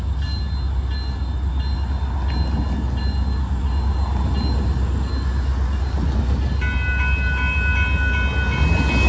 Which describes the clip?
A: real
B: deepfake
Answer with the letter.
A